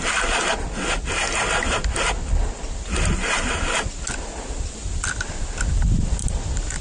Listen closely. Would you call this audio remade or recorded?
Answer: recorded